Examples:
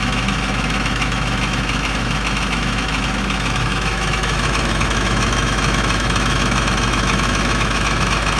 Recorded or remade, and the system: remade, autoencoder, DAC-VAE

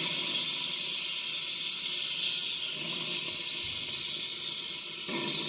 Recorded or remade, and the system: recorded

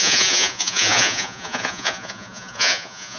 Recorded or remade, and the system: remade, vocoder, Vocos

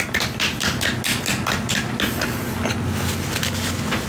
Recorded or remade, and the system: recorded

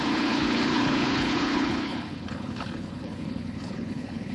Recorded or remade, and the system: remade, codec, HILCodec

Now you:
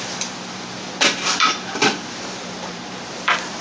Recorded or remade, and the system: remade, vocoder, BigVGAN v2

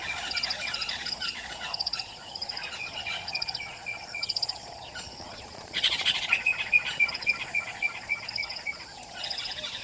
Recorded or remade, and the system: remade, vocoder, Vocos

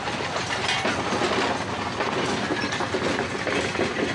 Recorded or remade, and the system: recorded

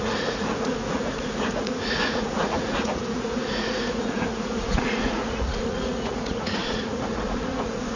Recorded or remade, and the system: remade, vocoder, Vocos